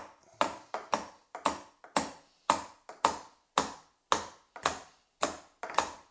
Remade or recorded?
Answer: recorded